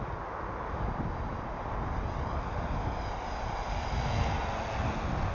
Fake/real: real